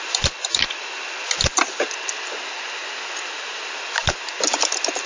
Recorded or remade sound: recorded